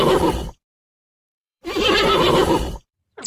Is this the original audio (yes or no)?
no